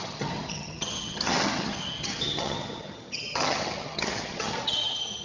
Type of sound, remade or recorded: remade